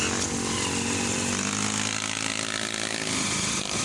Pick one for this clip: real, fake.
real